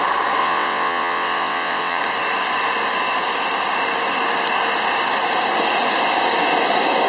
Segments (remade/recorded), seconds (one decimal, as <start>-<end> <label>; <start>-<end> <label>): 0.0-0.4 recorded; 0.4-2.0 remade; 2.0-7.1 recorded